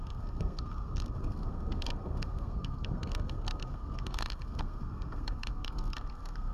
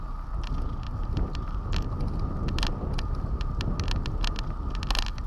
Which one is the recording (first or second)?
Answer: second